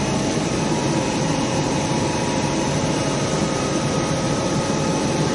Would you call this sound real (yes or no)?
no